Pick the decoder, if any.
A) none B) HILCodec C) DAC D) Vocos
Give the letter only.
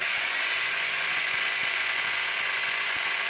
D